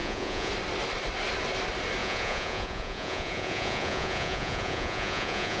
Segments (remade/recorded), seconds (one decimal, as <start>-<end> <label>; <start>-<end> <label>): 0.0-0.5 remade; 0.5-2.0 recorded; 2.0-5.6 remade